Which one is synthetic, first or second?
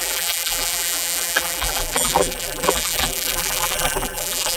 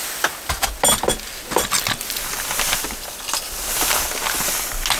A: first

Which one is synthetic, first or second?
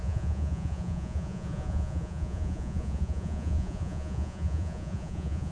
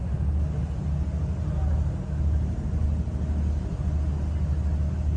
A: first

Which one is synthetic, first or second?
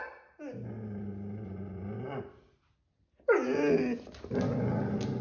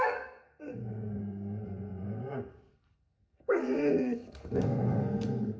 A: second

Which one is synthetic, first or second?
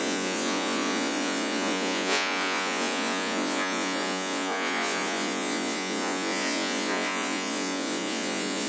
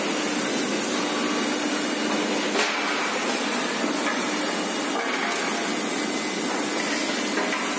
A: first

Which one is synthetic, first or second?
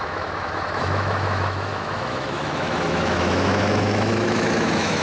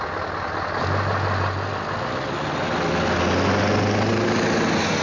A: first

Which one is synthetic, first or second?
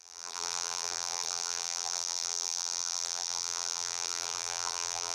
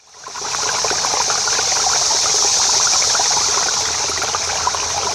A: first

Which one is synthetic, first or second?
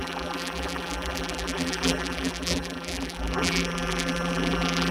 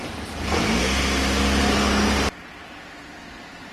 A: first